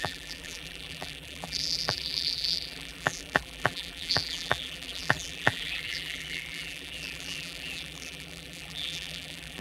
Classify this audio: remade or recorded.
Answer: remade